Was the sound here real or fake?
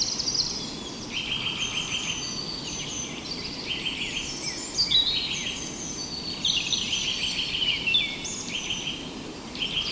real